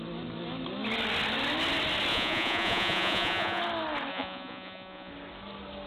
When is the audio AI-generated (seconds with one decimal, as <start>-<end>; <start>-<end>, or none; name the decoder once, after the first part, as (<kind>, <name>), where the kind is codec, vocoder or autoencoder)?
2.1-3.6 (vocoder, Vocos); 4.1-5.1